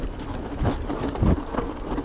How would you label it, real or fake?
real